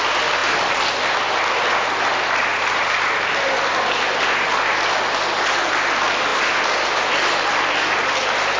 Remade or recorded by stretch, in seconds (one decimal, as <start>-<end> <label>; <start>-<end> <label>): 0.0-6.3 recorded; 6.3-7.1 remade; 7.1-8.6 recorded